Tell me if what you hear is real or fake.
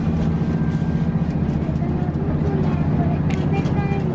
real